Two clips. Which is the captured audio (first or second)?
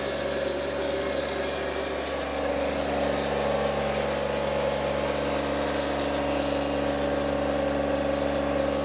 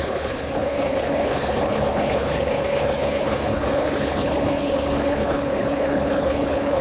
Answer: first